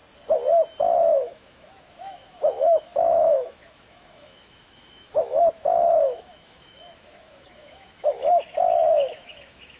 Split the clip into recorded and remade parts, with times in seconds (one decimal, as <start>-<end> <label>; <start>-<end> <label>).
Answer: 0.0-1.0 recorded; 1.0-9.8 remade